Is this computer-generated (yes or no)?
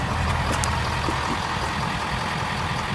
no